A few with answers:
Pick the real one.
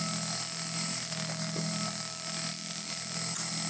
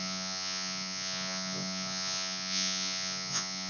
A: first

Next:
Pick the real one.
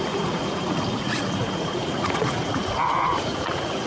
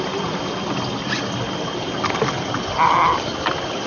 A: second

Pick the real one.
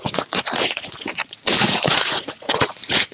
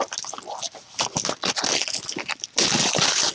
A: second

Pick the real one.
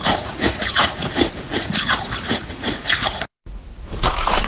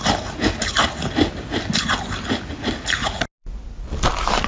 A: second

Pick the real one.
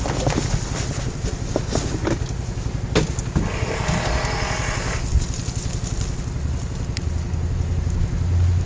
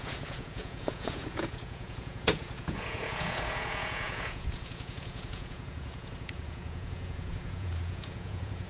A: first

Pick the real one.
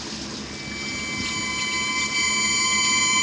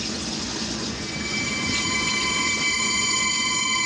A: first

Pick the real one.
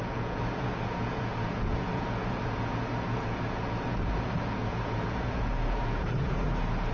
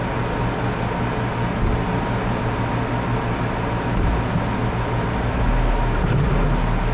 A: second